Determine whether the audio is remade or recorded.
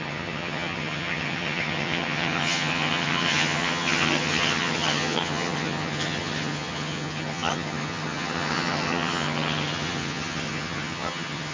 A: remade